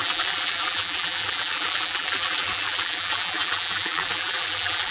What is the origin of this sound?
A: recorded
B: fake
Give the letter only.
B